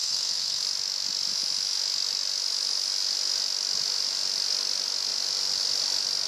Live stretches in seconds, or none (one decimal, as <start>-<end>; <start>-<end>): 0.6-6.3